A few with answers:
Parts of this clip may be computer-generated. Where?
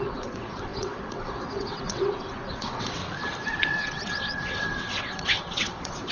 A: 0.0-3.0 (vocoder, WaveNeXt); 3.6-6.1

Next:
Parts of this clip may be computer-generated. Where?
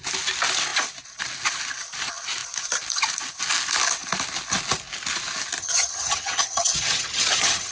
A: 5.6-7.7 (vocoder, HiFi-GAN)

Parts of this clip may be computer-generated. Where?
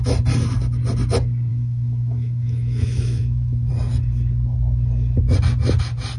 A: 1.5-3.7 (autoencoder, DAC-VAE)